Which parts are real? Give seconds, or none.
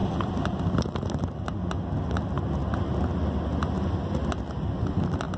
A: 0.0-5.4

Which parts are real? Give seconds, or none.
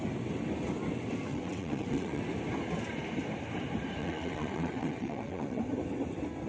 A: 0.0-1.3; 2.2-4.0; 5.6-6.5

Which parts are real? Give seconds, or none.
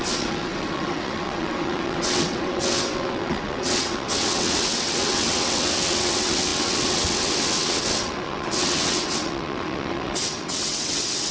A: none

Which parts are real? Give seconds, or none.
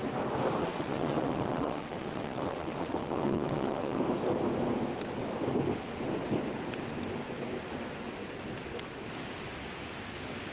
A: 0.0-0.6; 4.0-10.5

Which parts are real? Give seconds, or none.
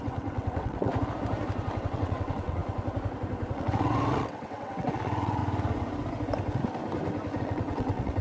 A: 0.9-1.8; 2.6-3.5; 5.4-7.4